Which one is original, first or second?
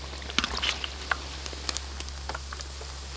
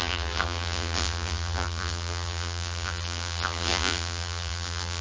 first